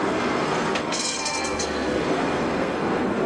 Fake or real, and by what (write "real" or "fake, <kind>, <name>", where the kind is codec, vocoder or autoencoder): fake, codec, SNAC